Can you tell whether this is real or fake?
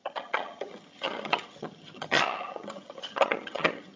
fake